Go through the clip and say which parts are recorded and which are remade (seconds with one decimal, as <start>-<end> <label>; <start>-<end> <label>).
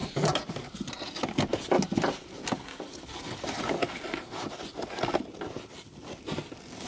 0.0-6.9 recorded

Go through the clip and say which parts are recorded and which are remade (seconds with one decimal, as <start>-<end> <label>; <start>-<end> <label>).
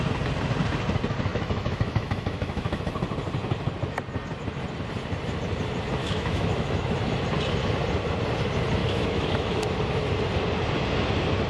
0.0-1.3 recorded; 1.3-2.8 remade; 2.8-6.0 recorded; 6.0-6.9 remade; 6.9-8.8 recorded; 8.8-9.7 remade; 9.7-11.5 recorded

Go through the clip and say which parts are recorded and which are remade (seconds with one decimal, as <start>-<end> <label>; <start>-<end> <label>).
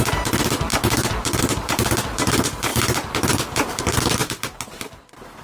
0.0-2.7 recorded; 2.7-3.8 remade; 3.8-5.4 recorded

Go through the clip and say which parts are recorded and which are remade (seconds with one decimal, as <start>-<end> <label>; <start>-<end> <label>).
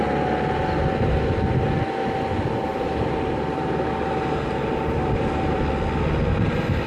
0.0-2.7 recorded; 2.7-5.6 remade; 5.6-6.9 recorded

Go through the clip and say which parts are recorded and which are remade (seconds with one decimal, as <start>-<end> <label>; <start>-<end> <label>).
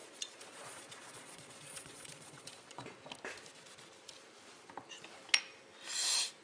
0.0-2.8 remade; 2.8-6.4 recorded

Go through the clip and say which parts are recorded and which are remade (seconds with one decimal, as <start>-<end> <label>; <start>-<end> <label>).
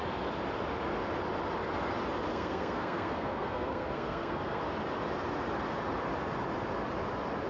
0.0-2.3 recorded; 2.3-4.6 remade; 4.6-7.5 recorded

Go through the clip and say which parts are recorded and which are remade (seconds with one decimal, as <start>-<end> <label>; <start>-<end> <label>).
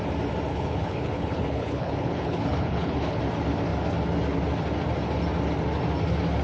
0.0-0.5 recorded; 0.5-3.2 remade; 3.2-6.4 recorded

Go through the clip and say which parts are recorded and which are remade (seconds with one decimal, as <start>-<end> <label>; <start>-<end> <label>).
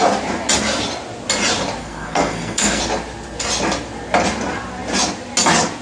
0.0-1.8 recorded; 1.8-2.8 remade; 2.8-5.8 recorded